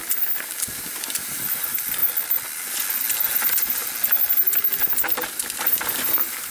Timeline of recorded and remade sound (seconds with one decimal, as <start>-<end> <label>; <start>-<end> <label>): 0.0-2.0 remade; 2.0-3.3 recorded; 3.3-3.8 remade; 3.8-5.6 recorded; 5.6-6.5 remade